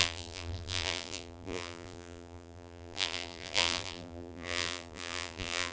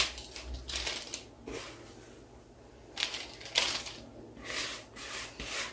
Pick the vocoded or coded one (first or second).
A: first